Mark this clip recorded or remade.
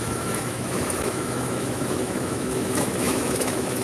remade